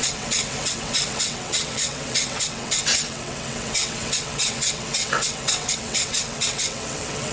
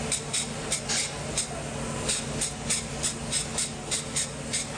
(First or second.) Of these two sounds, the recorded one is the second